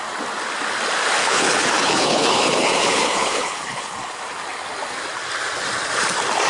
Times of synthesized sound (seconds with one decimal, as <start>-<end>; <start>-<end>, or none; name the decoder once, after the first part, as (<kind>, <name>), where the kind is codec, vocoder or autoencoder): 1.2-4.2 (codec, HILCodec)